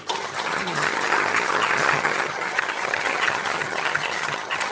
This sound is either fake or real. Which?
fake